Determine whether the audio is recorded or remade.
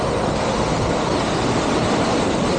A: remade